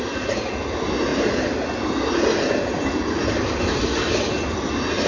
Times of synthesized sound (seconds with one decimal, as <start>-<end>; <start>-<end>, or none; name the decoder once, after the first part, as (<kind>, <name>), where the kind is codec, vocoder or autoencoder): none